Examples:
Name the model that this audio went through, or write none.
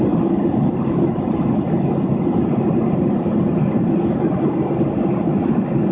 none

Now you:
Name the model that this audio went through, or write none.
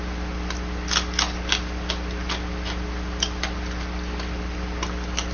none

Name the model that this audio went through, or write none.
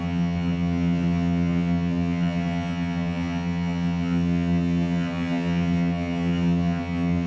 vocoder, HiFi-GAN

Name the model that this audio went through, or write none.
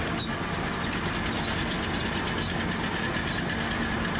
none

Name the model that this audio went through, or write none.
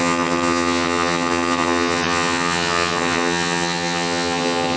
vocoder, HiFi-GAN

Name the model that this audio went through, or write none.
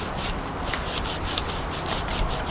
none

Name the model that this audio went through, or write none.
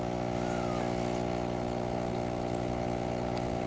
none